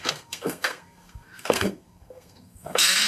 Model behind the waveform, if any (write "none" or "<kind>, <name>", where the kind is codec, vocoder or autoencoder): codec, SNAC